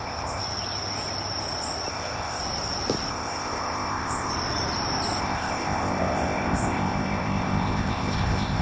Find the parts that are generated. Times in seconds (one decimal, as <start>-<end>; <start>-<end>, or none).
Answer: 0.0-0.4; 1.9-2.4; 3.1-4.3; 5.2-8.6